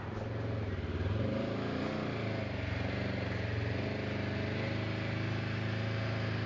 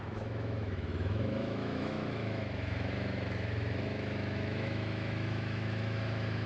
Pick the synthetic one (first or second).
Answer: second